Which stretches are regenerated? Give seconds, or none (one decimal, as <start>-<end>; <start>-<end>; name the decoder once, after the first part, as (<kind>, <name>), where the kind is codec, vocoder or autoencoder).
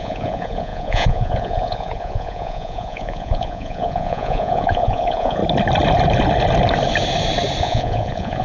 0.0-5.4 (vocoder, Vocos); 7.6-8.4